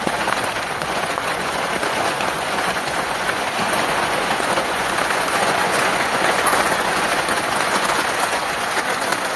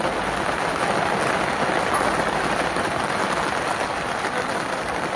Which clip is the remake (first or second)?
first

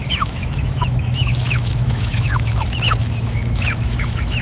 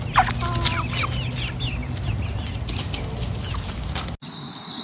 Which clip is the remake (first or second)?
first